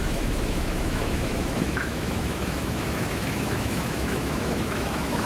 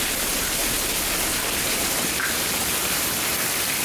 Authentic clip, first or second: second